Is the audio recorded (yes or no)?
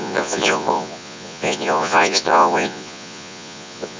no